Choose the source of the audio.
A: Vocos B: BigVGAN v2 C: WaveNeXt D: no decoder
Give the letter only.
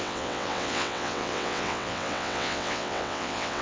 C